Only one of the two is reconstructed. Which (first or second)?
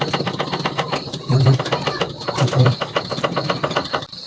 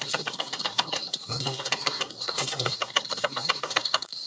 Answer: second